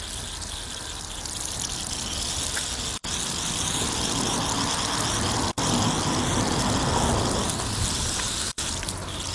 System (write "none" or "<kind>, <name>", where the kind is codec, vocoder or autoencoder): none